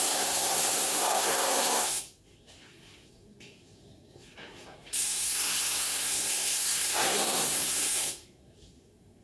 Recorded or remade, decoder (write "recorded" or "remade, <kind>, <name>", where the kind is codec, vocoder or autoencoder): remade, codec, SNAC